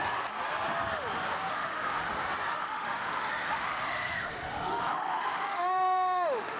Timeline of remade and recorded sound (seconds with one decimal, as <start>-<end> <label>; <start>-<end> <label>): 0.0-1.4 recorded; 1.4-2.1 remade; 2.1-2.5 recorded; 2.5-6.6 remade